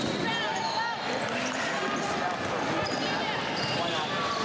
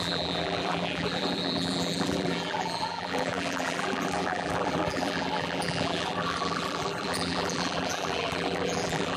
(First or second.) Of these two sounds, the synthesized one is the second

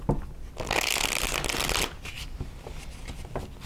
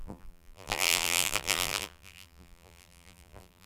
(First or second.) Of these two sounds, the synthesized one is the second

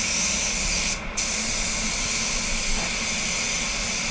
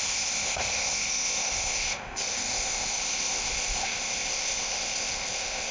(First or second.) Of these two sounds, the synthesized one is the second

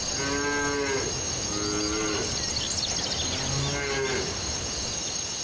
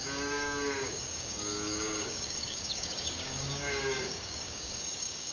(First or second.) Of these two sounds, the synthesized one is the second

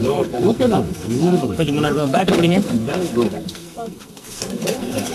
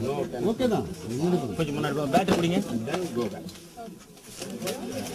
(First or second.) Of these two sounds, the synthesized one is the first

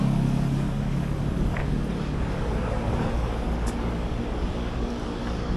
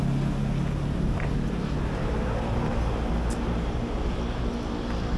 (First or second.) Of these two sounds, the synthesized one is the first